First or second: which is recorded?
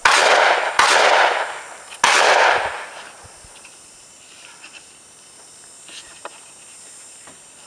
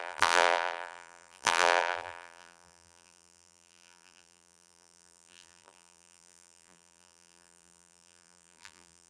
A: first